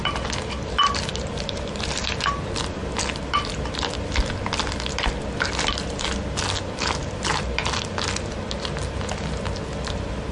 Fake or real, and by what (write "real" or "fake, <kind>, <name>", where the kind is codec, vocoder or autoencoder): real